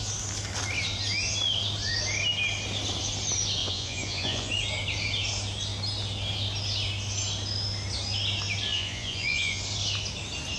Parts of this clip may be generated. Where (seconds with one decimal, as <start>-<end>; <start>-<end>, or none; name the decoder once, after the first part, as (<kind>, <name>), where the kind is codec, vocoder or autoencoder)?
3.6-4.5 (vocoder, Vocos); 8.7-9.6